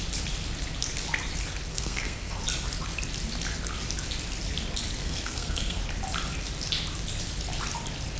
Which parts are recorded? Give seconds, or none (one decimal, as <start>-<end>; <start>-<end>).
0.0-1.7; 2.4-5.0; 5.8-8.2